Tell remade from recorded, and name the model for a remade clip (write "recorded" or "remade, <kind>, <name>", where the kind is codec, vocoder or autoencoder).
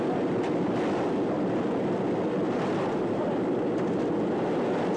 remade, vocoder, BigVGAN v2